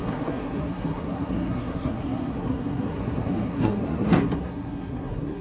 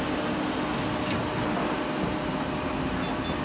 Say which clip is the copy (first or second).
first